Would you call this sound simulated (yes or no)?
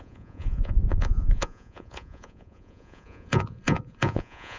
yes